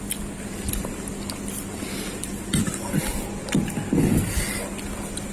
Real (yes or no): yes